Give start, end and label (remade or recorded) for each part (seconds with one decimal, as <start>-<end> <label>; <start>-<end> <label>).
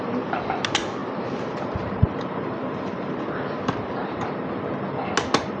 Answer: 0.0-1.0 recorded; 1.0-3.2 remade; 3.2-4.0 recorded; 4.0-4.7 remade; 4.7-5.6 recorded